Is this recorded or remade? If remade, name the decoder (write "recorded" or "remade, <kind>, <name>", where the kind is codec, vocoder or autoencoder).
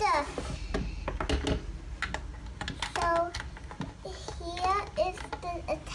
recorded